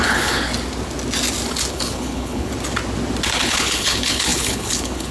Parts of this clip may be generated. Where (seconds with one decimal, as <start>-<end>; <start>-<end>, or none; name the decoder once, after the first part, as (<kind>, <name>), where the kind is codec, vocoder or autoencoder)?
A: 0.0-0.5 (codec, HILCodec); 1.7-2.5; 3.4-5.1